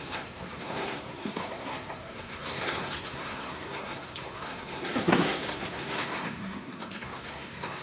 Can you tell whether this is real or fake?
fake